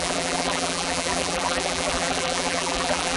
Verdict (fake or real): fake